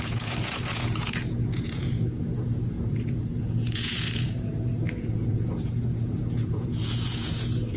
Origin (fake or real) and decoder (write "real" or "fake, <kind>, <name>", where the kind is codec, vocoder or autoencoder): fake, vocoder, Vocos